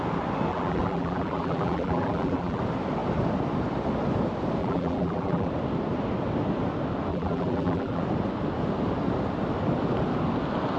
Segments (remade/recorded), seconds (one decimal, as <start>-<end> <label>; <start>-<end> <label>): 0.0-0.5 recorded; 0.5-2.6 remade; 2.6-4.6 recorded; 4.6-5.5 remade; 5.5-7.1 recorded; 7.1-8.0 remade; 8.0-10.8 recorded